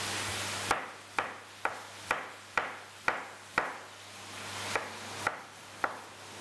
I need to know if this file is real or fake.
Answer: real